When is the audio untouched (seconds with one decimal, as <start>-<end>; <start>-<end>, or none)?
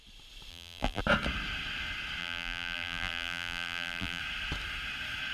0.0-0.5; 1.0-2.2; 4.2-5.3